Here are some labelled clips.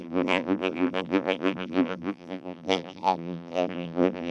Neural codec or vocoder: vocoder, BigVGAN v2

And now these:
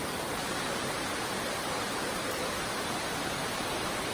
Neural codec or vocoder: vocoder, BigVGAN v2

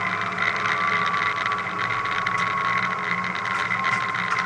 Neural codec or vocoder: none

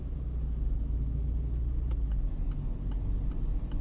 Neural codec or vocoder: none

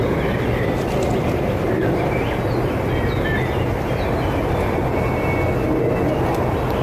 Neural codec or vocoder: none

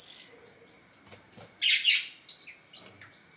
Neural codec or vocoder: none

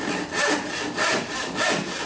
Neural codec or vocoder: none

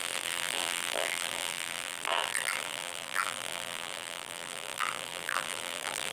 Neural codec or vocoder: vocoder, BigVGAN v2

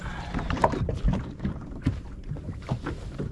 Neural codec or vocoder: vocoder, BigVGAN v2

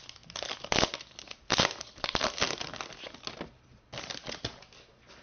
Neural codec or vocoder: none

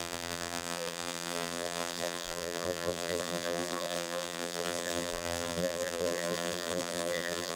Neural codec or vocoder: vocoder, BigVGAN v2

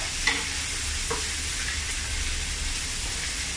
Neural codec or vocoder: none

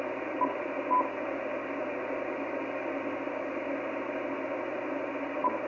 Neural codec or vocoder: none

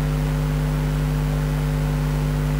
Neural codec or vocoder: none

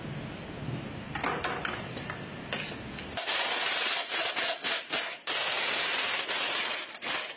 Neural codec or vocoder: none